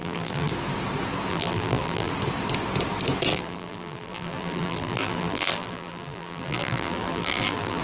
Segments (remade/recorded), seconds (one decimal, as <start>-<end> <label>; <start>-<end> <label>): 0.0-0.5 remade; 0.5-1.3 recorded; 1.3-2.1 remade; 2.1-3.3 recorded; 3.3-7.8 remade